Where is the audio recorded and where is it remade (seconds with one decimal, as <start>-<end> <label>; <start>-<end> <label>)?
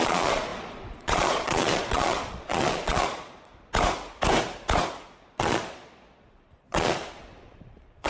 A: 0.0-3.5 remade; 3.5-5.4 recorded; 5.4-8.1 remade